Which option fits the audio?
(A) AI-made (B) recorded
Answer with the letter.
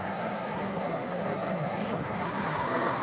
A